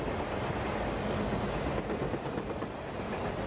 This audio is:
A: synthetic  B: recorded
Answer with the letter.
B